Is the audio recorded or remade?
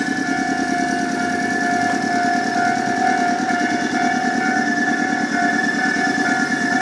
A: recorded